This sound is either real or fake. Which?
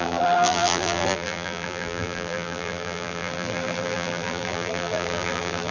fake